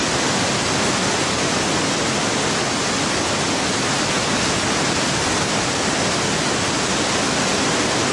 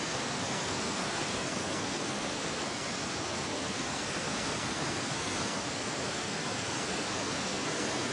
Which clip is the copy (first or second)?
second